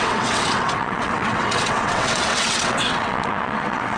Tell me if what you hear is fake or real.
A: fake